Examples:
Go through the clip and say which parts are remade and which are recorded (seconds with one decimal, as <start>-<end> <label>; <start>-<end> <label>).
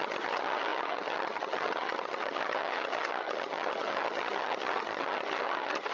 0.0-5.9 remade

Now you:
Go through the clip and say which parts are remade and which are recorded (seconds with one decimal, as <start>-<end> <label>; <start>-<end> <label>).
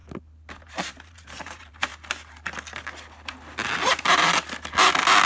0.0-0.6 recorded; 0.6-1.9 remade; 1.9-5.3 recorded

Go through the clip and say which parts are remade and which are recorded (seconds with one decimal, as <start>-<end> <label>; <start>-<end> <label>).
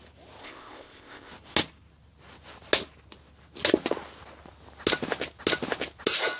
0.0-0.4 recorded; 0.4-1.3 remade; 1.3-6.4 recorded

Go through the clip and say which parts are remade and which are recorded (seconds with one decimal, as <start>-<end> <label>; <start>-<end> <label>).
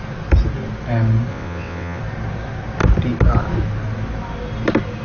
0.0-1.3 recorded; 1.3-2.0 remade; 2.0-5.0 recorded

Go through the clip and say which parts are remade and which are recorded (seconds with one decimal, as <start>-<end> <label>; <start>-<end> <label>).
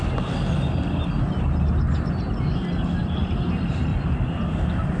0.0-3.9 recorded; 3.9-5.0 remade